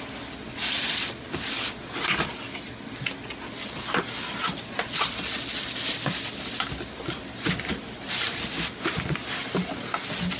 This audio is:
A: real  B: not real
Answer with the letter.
A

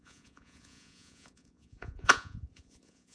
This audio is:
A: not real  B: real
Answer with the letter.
A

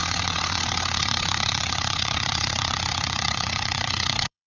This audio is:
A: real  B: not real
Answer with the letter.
B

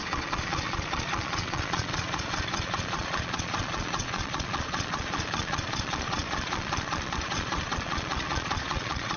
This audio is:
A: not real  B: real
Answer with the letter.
A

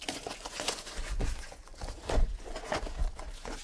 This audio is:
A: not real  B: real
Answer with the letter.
A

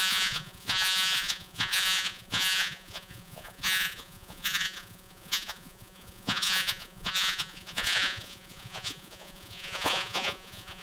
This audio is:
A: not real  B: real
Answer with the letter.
A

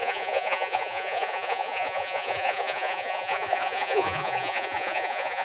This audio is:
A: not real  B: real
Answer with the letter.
A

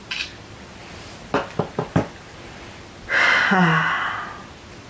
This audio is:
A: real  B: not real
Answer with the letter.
A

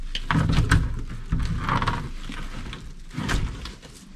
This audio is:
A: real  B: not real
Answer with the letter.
A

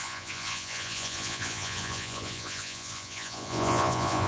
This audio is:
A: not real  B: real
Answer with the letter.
A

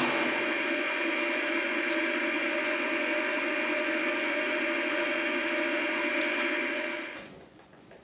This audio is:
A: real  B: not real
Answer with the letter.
B